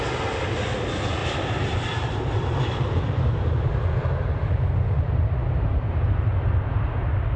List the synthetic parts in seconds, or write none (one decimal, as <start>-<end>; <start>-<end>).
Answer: 1.2-3.5